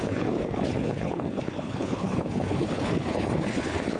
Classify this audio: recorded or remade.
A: remade